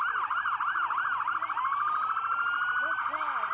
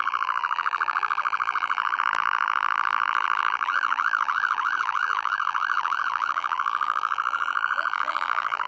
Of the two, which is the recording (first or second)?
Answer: first